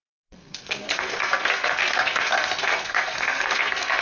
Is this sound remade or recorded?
remade